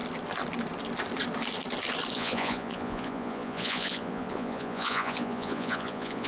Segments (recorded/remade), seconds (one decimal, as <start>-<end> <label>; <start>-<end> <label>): 0.0-2.1 recorded; 2.1-6.3 remade